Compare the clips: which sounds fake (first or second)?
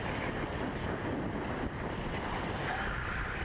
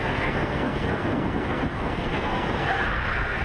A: second